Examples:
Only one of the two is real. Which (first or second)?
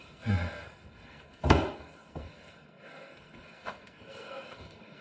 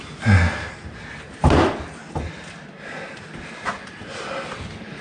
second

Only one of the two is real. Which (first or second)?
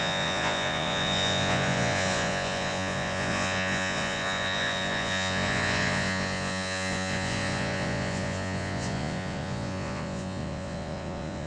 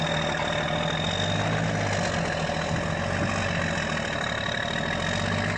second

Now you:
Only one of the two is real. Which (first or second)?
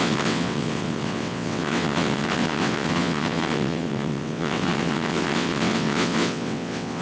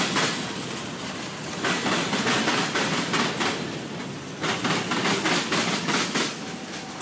second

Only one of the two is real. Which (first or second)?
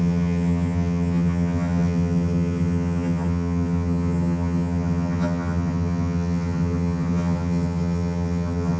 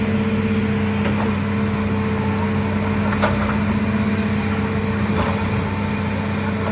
second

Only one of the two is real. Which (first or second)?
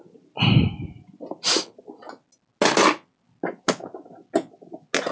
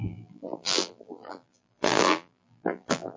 first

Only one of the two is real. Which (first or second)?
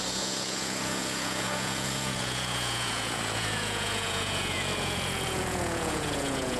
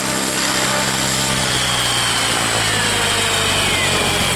second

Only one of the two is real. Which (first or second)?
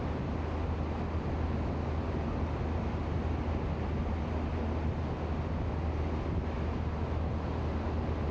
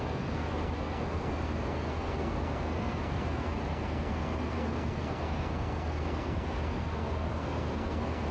first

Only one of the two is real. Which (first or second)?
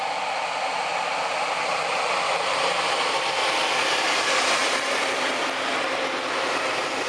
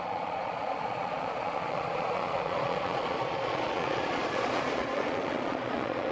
first